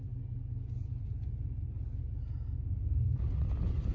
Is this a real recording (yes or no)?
yes